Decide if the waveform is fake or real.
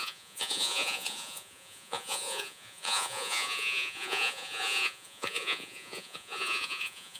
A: fake